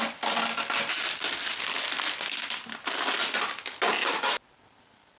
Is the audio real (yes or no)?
yes